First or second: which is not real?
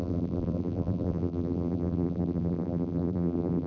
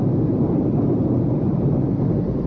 first